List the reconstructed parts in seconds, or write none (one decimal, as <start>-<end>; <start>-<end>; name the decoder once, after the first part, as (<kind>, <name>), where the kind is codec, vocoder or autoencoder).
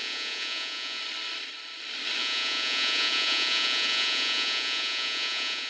0.0-1.0 (vocoder, Vocos); 2.2-5.7